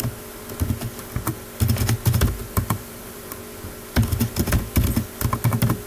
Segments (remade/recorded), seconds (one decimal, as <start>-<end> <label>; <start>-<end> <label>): 0.0-2.4 recorded; 2.4-3.2 remade; 3.2-5.9 recorded